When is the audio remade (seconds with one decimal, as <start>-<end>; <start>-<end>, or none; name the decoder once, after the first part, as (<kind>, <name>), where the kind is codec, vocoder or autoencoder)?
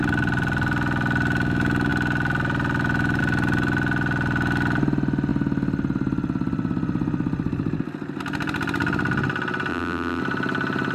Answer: 9.7-10.2 (vocoder, BigVGAN v2)